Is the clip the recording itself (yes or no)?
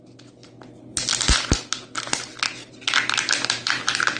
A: yes